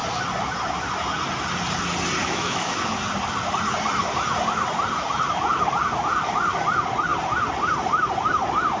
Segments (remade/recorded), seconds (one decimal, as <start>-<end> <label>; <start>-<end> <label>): 0.0-2.2 recorded; 2.2-2.9 remade; 2.9-8.8 recorded